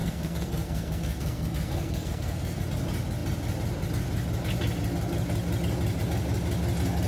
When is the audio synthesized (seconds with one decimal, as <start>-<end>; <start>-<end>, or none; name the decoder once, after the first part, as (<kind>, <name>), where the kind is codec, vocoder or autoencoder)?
0.0-2.6 (codec, SNAC)